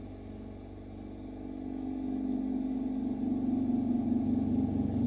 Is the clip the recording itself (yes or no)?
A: yes